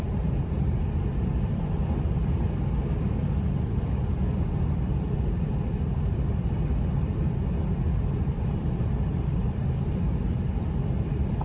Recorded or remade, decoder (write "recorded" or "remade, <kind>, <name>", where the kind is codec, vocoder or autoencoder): remade, vocoder, BigVGAN v2